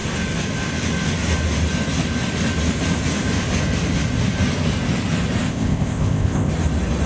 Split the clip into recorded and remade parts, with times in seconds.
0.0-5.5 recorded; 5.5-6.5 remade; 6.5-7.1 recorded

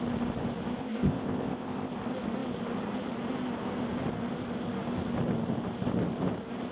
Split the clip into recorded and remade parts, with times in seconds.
0.0-0.8 recorded; 0.8-1.9 remade; 1.9-6.7 recorded

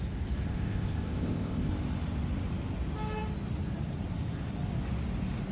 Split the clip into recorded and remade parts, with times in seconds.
0.0-0.5 recorded; 0.5-1.7 remade; 1.7-5.5 recorded

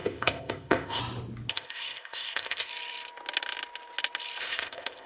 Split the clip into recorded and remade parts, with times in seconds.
0.0-1.0 remade; 1.0-1.5 recorded; 1.5-2.7 remade; 2.7-4.4 recorded; 4.4-5.1 remade

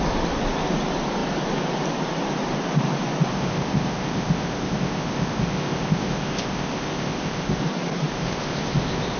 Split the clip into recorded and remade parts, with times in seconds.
0.0-3.3 recorded; 3.3-7.6 remade; 7.6-8.1 recorded; 8.1-9.2 remade